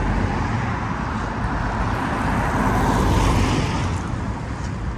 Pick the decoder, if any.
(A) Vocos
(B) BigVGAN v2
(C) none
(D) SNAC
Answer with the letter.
C